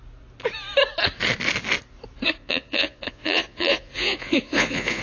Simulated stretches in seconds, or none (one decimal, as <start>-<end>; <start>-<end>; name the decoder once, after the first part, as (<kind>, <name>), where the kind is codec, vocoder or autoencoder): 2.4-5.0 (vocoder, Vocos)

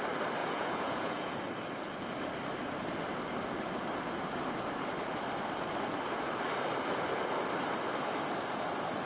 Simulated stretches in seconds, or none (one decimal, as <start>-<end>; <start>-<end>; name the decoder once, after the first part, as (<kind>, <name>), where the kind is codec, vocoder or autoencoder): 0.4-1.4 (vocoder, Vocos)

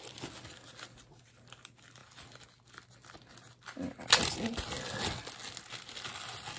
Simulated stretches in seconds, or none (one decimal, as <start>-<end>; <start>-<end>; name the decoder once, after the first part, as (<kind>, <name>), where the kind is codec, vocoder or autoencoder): none

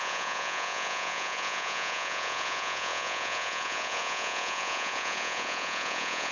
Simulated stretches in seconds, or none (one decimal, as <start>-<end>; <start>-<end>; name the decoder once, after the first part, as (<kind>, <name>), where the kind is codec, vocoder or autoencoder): 0.0-6.3 (vocoder, Vocos)

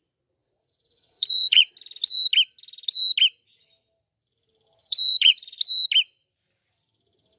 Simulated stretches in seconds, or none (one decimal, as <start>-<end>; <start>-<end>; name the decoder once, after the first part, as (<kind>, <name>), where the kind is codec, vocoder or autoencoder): 0.4-1.7 (vocoder, Vocos); 4.8-5.6